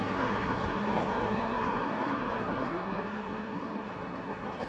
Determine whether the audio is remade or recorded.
remade